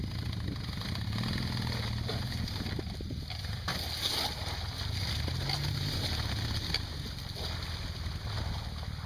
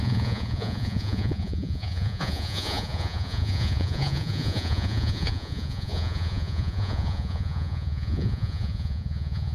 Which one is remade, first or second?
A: second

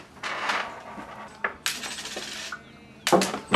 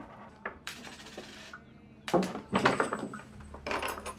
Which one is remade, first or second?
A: second